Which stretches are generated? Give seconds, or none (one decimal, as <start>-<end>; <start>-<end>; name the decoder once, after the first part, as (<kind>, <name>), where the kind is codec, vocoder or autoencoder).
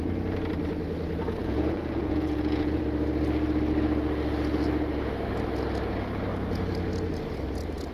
1.4-2.8 (vocoder, Vocos)